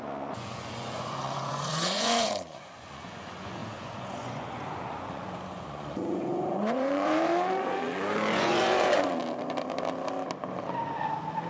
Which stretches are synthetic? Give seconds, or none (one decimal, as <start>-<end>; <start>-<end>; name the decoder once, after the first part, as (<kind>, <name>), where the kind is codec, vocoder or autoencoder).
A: 0.0-9.2 (vocoder, Vocos)